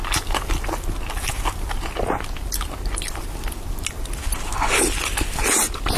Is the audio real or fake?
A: real